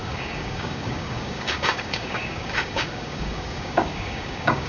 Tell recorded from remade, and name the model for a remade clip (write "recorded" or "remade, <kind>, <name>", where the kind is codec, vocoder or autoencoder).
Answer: remade, codec, DAC